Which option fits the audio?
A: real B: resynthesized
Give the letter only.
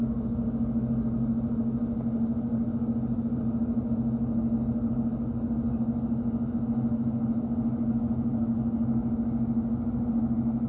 A